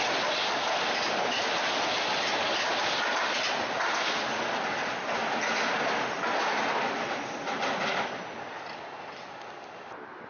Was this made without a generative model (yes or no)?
yes